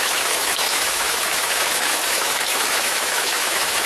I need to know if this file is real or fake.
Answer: fake